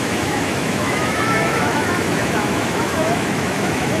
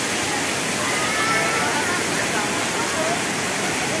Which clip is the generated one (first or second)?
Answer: first